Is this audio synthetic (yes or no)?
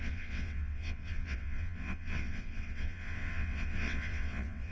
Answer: yes